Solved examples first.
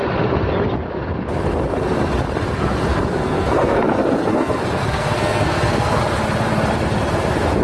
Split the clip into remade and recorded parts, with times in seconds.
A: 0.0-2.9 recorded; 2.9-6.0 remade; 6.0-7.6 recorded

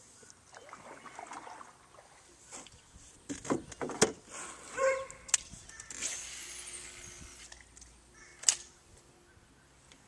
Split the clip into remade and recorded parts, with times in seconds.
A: 0.0-10.1 recorded

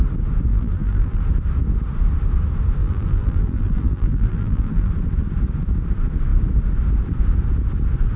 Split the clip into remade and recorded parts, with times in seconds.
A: 0.0-0.5 recorded; 0.5-1.2 remade; 1.2-2.8 recorded; 2.8-4.9 remade; 4.9-8.2 recorded

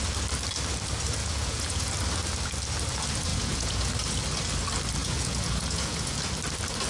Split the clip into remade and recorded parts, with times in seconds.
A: 0.0-1.2 recorded; 1.2-1.9 remade; 1.9-3.3 recorded; 3.3-3.9 remade; 3.9-5.0 recorded; 5.0-6.3 remade; 6.3-6.9 recorded

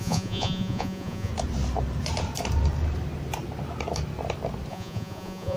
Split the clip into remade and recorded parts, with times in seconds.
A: 0.0-1.3 remade; 1.3-4.7 recorded; 4.7-5.6 remade

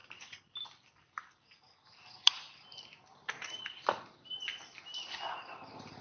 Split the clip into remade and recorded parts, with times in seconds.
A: 0.0-6.0 recorded

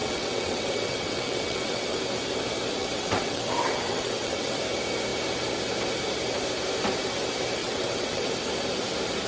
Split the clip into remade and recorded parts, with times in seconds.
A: 0.0-2.0 remade; 2.0-2.8 recorded; 2.8-4.6 remade; 4.6-7.6 recorded; 7.6-8.3 remade; 8.3-9.3 recorded

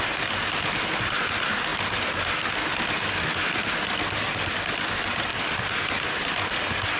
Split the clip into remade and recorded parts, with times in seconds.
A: 0.0-5.3 recorded; 5.3-6.6 remade; 6.6-7.0 recorded